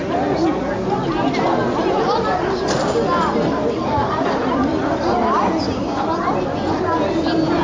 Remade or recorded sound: recorded